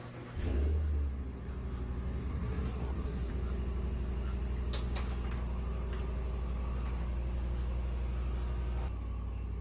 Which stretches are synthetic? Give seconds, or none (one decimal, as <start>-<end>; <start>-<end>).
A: 2.2-3.3